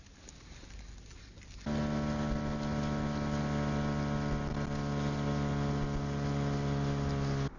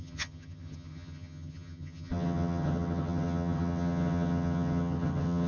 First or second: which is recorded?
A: first